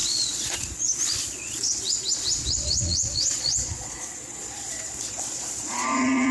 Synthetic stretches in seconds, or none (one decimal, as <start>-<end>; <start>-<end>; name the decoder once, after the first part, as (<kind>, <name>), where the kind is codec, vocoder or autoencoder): 0.0-6.3 (vocoder, Vocos)